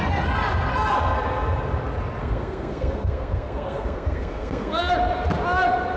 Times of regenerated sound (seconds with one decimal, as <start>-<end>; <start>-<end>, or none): 2.2-4.9